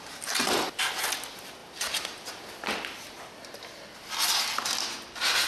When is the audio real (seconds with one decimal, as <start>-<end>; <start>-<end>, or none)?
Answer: 0.0-5.5